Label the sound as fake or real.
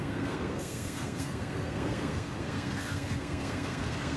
fake